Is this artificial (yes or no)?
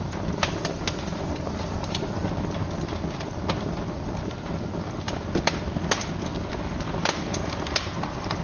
no